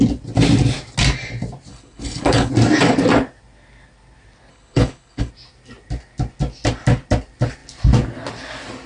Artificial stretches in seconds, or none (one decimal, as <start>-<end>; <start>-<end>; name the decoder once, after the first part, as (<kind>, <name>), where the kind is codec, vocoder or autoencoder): 1.7-2.5 (codec, HILCodec); 4.5-5.3

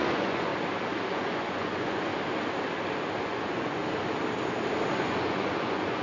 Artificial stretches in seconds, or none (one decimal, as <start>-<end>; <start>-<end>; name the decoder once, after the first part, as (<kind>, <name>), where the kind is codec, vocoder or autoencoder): 0.0-0.5 (vocoder, Vocos); 1.1-2.1; 3.2-3.8; 4.9-6.0

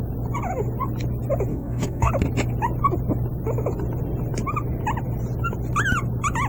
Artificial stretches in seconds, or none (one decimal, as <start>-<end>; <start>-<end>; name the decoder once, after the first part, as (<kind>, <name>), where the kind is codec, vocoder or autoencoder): 1.5-2.1 (codec, DAC)

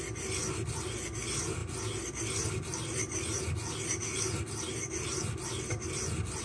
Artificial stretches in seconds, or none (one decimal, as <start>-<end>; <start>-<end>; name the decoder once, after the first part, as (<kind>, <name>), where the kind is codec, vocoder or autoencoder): none

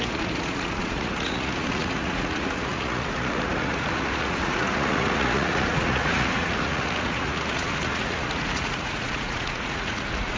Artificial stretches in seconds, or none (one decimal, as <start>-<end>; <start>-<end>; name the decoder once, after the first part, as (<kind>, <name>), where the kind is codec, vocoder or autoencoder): 0.0-10.4 (vocoder, Vocos)

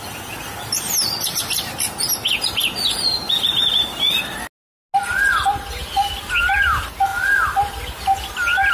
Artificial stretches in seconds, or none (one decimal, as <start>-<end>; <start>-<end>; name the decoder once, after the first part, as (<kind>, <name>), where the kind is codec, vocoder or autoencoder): none

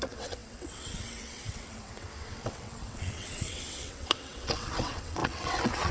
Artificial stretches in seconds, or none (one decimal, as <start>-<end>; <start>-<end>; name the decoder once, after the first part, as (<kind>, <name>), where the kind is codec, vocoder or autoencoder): 0.0-5.9 (vocoder, WaveNeXt)